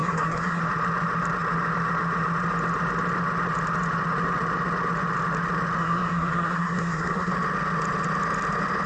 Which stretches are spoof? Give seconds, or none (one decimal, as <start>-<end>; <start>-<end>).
0.0-0.6; 5.8-7.3